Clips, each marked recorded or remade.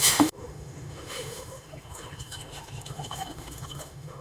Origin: remade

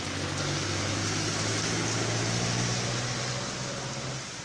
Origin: recorded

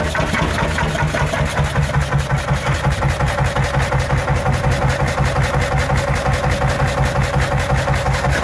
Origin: recorded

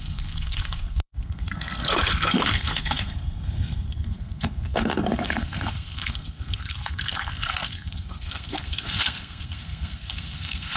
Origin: remade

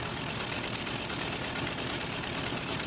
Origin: recorded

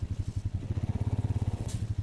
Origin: remade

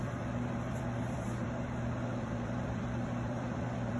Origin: remade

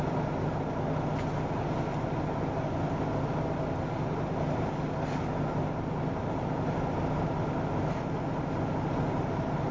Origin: recorded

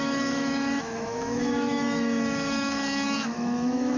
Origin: remade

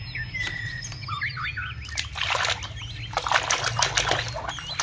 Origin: recorded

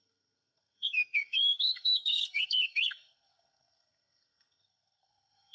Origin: remade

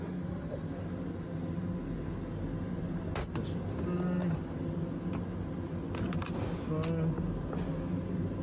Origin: recorded